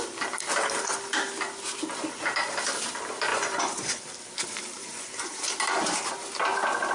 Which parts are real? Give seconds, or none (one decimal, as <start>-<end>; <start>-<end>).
0.0-3.3; 4.0-4.8; 5.4-6.9

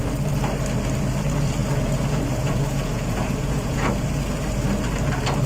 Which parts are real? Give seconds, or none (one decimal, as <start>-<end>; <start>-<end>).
0.0-1.6; 3.9-5.5

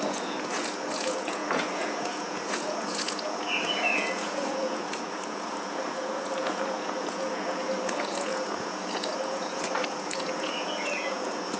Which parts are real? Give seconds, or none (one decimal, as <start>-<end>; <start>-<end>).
none

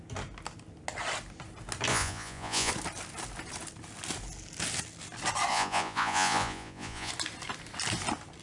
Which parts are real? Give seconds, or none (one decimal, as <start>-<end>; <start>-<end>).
0.0-1.9; 2.7-5.5; 7.1-8.4

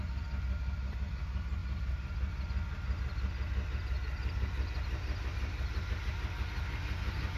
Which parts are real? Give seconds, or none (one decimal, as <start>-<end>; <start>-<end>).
0.0-7.4

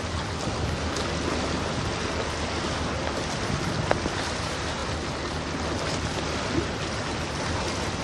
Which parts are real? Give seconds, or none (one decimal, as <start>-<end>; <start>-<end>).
0.0-8.0